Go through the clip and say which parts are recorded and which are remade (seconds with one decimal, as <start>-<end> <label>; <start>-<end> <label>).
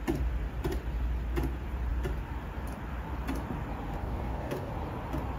0.0-4.0 recorded; 4.0-4.7 remade; 4.7-5.4 recorded